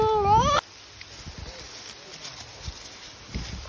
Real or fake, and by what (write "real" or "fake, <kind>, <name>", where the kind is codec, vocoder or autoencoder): real